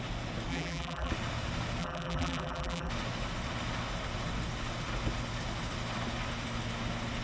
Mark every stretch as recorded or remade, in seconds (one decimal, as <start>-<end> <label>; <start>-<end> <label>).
0.0-0.5 recorded; 0.5-1.1 remade; 1.1-1.8 recorded; 1.8-2.9 remade; 2.9-7.2 recorded